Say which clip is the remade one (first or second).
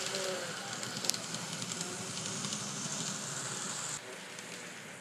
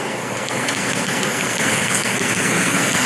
second